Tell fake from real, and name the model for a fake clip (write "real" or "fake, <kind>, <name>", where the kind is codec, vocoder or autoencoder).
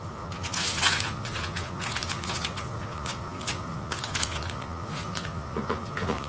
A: fake, vocoder, Vocos